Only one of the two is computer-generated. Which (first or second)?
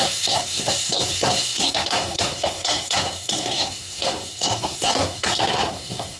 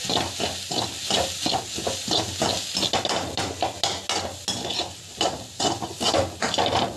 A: first